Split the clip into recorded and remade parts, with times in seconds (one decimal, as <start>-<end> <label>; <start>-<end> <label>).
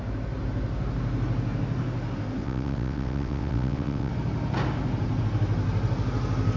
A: 0.0-2.4 recorded; 2.4-4.1 remade; 4.1-6.6 recorded